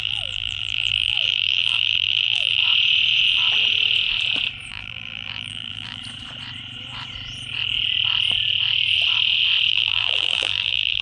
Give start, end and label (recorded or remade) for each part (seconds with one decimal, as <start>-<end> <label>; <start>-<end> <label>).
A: 0.0-2.6 remade; 2.6-4.7 recorded; 4.7-6.0 remade; 6.0-9.7 recorded; 9.7-11.0 remade